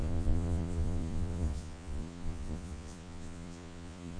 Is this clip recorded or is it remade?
remade